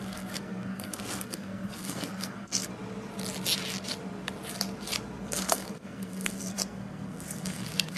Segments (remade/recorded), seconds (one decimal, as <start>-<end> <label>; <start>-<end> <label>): 0.0-2.7 remade; 2.7-5.2 recorded; 5.2-8.0 remade